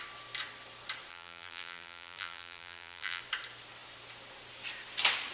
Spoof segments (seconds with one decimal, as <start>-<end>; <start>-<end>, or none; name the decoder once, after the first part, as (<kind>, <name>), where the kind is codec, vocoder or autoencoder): 1.1-3.2 (vocoder, BigVGAN v2)